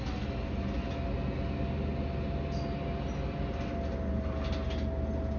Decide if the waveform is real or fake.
real